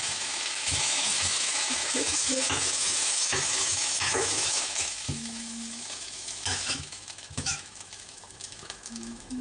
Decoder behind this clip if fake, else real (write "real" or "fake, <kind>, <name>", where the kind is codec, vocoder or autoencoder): fake, autoencoder, DAC-VAE